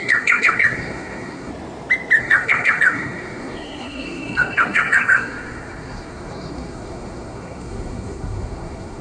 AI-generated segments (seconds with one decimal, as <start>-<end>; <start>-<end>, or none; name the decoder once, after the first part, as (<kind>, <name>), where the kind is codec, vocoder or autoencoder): 0.0-1.5 (codec, SNAC); 2.2-9.0